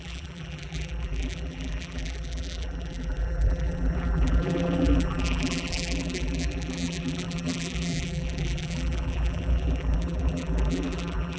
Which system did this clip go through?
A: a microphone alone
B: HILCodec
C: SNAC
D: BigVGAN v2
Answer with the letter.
D